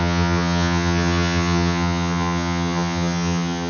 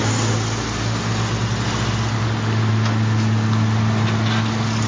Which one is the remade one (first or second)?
first